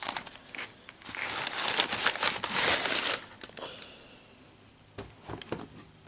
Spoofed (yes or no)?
no